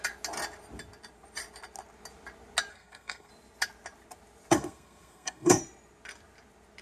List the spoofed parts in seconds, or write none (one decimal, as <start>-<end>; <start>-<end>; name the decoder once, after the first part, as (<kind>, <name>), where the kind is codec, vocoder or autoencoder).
2.7-3.3 (codec, SNAC); 4.5-5.6